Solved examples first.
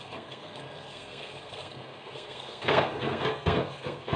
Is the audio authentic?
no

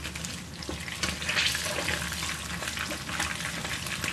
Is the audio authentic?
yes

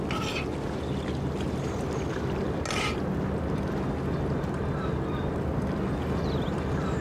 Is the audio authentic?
yes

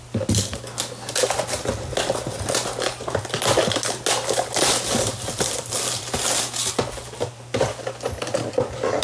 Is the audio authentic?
yes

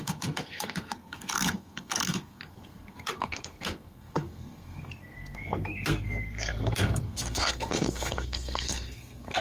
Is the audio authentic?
no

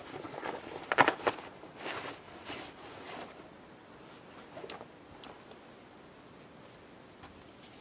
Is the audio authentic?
yes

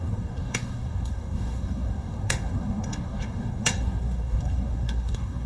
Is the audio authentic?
no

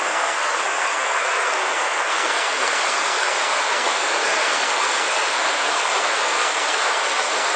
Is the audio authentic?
no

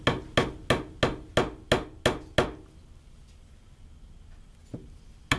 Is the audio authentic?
yes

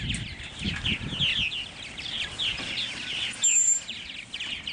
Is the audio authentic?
yes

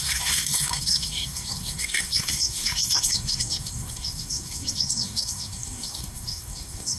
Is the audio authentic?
no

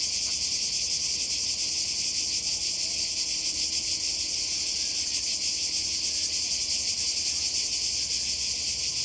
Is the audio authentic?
yes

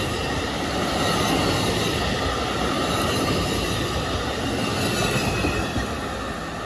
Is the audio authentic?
yes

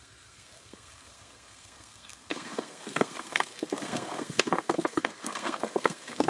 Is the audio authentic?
no